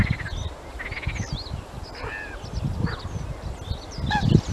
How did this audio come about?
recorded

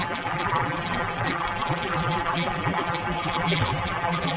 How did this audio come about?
remade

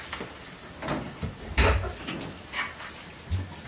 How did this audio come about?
recorded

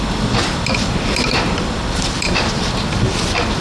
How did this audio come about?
remade